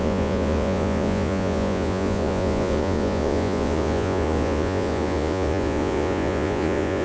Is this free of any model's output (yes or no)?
no